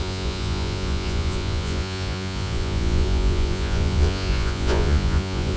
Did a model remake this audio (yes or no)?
yes